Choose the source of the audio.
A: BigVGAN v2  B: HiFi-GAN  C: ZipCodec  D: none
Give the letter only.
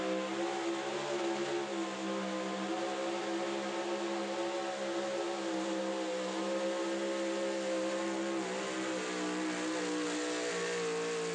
D